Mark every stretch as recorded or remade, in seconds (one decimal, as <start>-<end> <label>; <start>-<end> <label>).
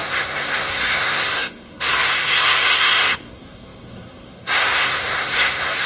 0.0-5.9 remade